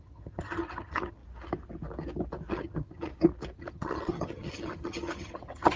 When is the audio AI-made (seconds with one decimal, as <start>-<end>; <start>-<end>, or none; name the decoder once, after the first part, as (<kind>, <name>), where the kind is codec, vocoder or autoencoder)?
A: 0.0-1.2 (vocoder, HiFi-GAN); 2.5-3.1; 3.6-5.8